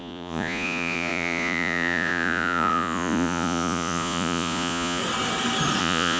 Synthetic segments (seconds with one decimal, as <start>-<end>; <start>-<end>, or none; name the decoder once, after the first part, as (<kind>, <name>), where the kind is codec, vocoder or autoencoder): 0.0-5.0 (vocoder, Vocos); 5.8-6.2